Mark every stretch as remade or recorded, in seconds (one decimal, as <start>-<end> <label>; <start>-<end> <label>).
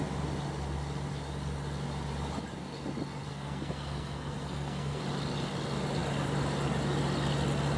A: 0.0-3.3 recorded; 3.3-5.0 remade; 5.0-7.8 recorded